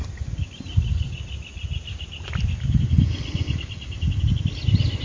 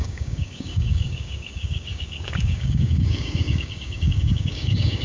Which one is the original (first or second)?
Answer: first